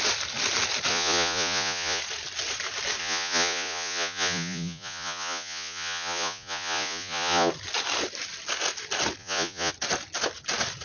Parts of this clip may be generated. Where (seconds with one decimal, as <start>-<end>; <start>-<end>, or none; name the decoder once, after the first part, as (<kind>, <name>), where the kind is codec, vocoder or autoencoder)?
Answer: 0.9-2.0 (vocoder, Vocos); 3.0-7.5; 9.2-9.7